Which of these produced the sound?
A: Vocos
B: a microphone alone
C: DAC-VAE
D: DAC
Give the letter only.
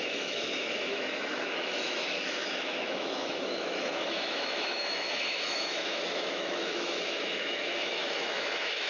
C